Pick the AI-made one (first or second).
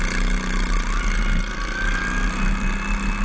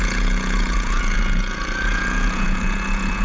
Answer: second